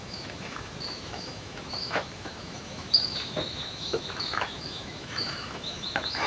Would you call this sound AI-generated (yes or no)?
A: yes